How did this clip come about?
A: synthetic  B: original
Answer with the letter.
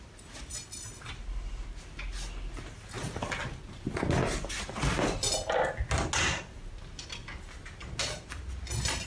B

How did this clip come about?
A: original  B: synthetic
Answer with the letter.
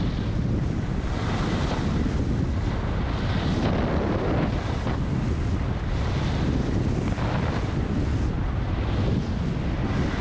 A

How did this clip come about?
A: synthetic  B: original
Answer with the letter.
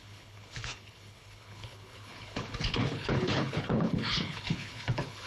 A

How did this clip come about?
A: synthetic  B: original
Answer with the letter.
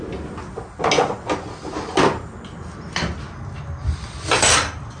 B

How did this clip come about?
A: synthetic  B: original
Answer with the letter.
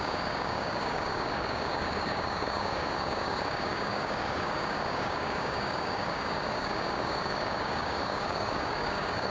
A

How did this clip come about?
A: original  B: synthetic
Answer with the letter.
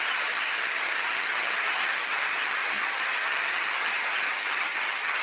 B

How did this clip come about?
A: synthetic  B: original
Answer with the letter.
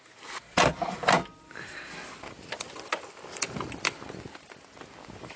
B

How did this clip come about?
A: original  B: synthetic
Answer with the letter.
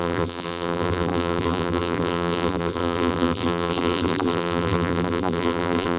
B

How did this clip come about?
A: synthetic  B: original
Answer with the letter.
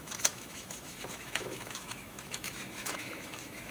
A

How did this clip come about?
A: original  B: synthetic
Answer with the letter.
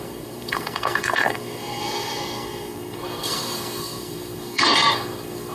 B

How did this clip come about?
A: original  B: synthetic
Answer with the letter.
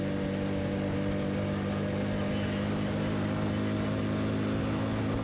A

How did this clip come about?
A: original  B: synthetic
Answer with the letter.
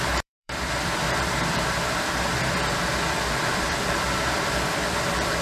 B